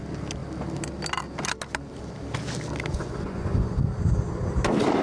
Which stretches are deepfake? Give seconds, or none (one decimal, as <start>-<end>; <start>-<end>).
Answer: 2.9-3.8